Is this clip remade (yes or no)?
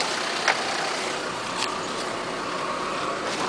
no